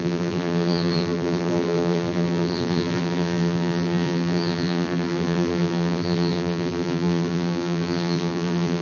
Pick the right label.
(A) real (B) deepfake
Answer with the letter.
B